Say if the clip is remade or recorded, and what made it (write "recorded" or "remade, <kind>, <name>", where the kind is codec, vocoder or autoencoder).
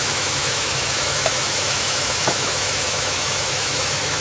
remade, autoencoder, DAC-VAE